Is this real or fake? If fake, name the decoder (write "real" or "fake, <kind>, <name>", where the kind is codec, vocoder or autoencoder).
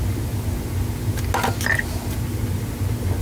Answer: real